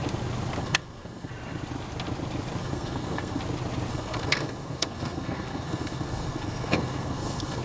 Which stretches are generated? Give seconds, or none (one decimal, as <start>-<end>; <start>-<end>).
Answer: 0.6-1.3; 2.6-3.4; 3.9-7.6